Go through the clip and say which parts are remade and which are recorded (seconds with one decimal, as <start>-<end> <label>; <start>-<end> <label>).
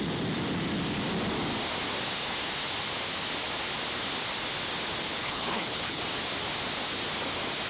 0.0-5.2 recorded; 5.2-6.0 remade; 6.0-7.7 recorded